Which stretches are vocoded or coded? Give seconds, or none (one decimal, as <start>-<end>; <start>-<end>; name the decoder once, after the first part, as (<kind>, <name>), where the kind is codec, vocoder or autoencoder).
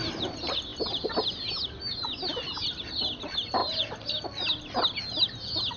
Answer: none